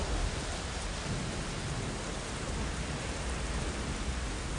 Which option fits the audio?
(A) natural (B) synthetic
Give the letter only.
A